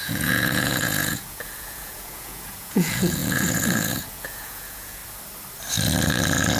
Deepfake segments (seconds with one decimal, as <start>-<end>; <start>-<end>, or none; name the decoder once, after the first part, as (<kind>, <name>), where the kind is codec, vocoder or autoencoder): 0.0-5.0 (vocoder, Vocos)